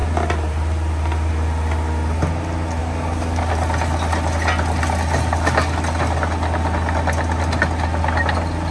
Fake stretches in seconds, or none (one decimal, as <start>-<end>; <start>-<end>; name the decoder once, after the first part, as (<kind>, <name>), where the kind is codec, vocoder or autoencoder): 2.8-3.5 (codec, DAC)